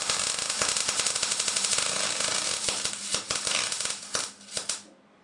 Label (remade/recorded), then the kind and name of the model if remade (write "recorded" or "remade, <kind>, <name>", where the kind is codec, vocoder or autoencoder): recorded